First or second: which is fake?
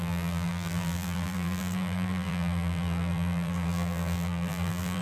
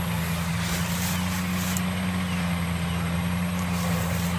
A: first